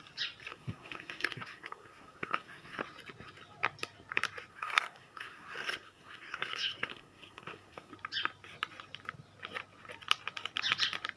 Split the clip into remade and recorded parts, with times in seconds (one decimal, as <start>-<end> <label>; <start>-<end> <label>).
0.0-0.5 recorded; 0.5-2.8 remade; 2.8-4.5 recorded; 4.5-7.9 remade; 7.9-11.2 recorded